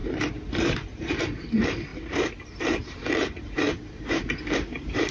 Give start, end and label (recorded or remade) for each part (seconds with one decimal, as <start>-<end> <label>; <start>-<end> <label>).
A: 0.0-5.1 remade